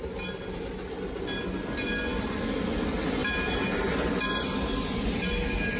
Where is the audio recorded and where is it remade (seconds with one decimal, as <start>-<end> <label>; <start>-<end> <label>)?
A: 0.0-3.2 recorded; 3.2-3.8 remade; 3.8-5.8 recorded